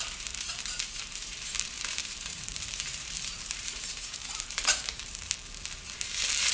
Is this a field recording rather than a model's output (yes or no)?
no